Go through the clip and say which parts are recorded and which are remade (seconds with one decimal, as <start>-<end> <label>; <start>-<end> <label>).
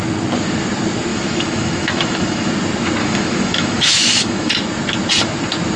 0.0-1.1 recorded; 1.1-2.5 remade; 2.5-3.0 recorded; 3.0-4.5 remade; 4.5-5.8 recorded